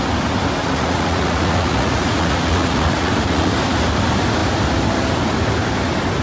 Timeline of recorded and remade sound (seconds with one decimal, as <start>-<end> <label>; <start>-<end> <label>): 0.0-0.6 recorded; 0.6-3.5 remade; 3.5-6.2 recorded